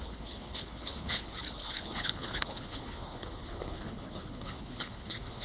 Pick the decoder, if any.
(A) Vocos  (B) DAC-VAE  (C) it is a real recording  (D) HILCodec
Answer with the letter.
D